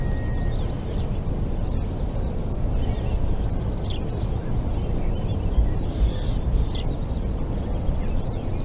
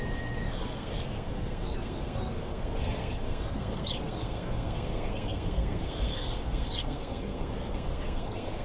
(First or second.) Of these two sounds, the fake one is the second